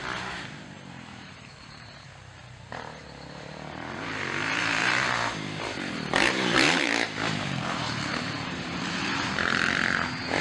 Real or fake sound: fake